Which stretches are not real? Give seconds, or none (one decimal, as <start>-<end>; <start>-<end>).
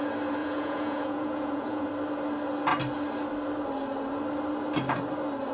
0.4-1.9